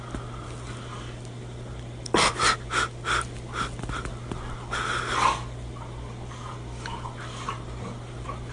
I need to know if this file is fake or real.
real